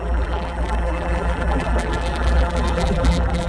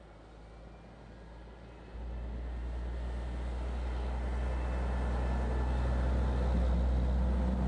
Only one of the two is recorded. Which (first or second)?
second